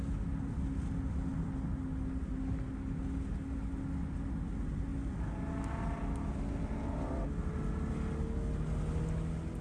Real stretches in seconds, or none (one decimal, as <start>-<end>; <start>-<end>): 0.0-9.6